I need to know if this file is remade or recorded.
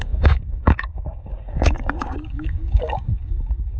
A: remade